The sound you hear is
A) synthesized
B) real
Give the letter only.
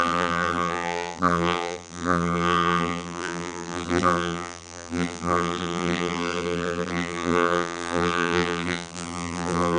A